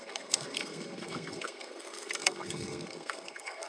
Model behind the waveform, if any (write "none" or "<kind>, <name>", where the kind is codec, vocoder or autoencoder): codec, SNAC